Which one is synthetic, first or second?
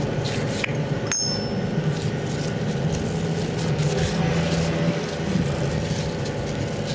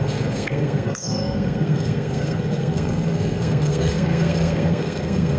second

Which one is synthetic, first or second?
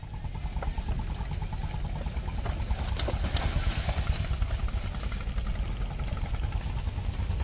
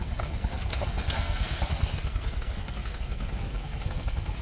second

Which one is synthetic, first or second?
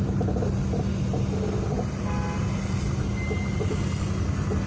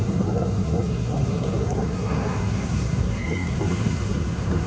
second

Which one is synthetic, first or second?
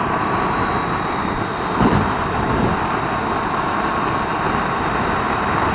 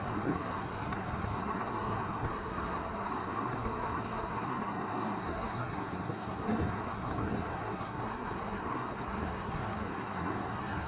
second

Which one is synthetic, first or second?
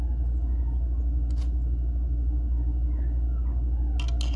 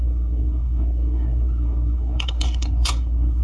second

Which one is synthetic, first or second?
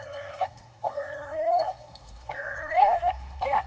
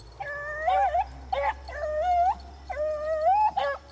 first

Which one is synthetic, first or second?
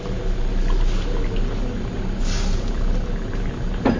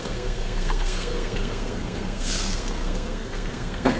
second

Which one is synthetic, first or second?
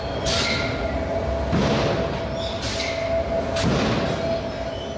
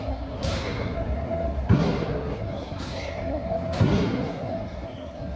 second